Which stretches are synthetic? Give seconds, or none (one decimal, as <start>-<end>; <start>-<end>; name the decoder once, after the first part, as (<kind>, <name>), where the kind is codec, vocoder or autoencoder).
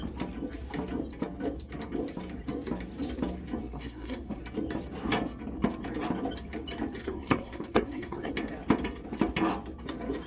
3.6-4.4 (codec, SNAC); 7.0-8.3